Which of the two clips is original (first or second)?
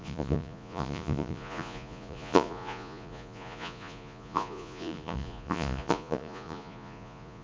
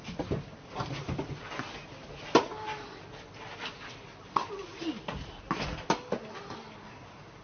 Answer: second